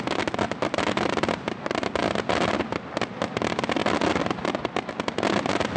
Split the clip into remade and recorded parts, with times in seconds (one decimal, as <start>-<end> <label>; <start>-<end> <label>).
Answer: 0.0-5.8 recorded